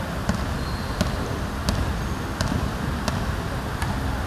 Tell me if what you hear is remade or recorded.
recorded